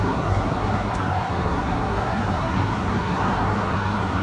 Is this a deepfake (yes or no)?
yes